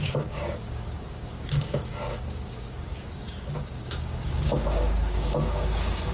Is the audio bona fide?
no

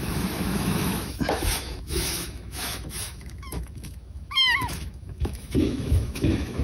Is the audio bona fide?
no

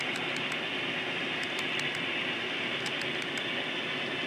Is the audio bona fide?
yes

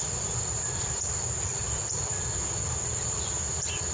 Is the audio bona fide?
yes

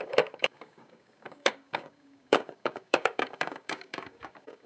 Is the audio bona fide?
no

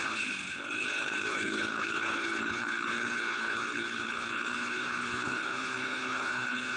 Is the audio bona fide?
no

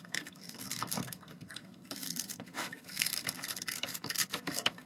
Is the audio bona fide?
no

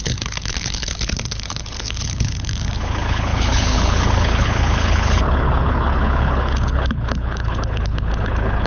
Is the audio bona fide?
no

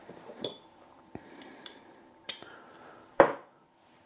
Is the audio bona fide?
no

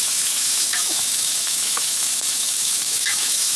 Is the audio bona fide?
no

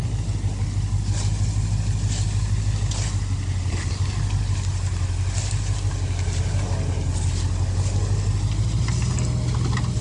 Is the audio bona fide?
yes